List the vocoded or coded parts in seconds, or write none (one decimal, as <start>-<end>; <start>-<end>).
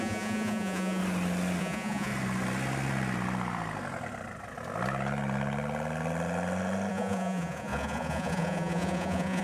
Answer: 0.0-1.0; 1.6-2.1; 6.9-9.4